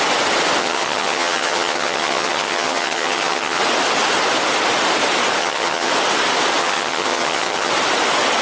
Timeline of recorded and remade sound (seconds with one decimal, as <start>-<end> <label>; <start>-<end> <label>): 0.0-0.6 recorded; 0.6-3.6 remade; 3.6-5.4 recorded; 5.4-5.9 remade; 5.9-6.6 recorded; 6.6-7.7 remade; 7.7-8.4 recorded